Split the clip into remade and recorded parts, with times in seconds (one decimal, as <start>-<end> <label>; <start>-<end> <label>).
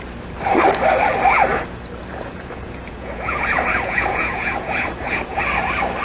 0.0-2.1 recorded; 2.1-5.4 remade; 5.4-6.0 recorded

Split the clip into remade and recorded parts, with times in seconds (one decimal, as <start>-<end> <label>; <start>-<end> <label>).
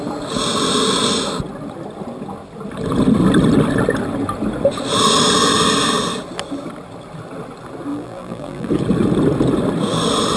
0.0-7.9 recorded; 7.9-8.7 remade; 8.7-10.4 recorded